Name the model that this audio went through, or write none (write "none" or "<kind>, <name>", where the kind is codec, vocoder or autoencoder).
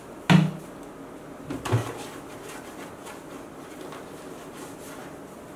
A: none